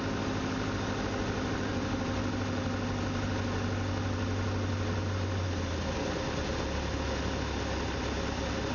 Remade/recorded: recorded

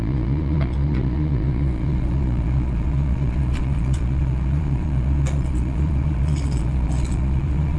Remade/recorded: remade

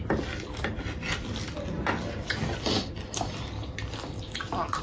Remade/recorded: recorded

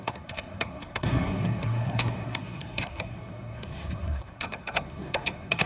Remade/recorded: remade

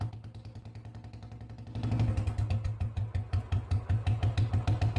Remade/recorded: recorded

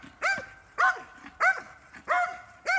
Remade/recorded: recorded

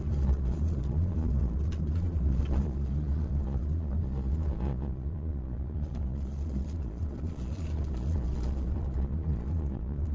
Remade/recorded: remade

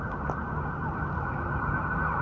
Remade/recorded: recorded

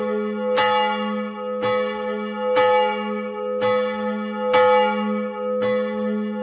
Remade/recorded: recorded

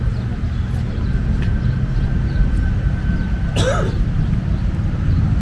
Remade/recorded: recorded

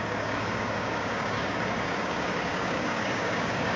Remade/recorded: remade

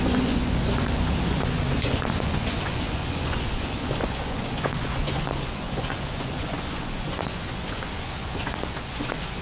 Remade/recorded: remade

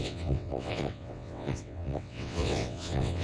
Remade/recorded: remade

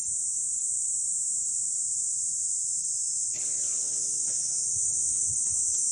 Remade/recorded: recorded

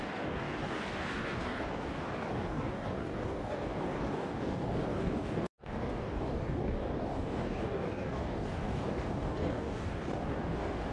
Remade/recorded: remade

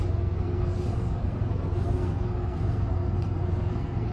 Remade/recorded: remade